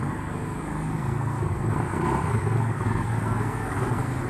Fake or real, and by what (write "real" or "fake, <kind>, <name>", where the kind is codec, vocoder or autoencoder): fake, codec, SNAC